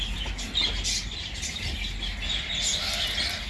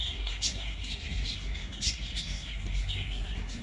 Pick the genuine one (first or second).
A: first